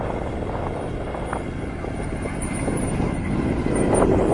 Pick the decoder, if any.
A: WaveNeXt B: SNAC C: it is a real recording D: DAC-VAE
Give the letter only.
C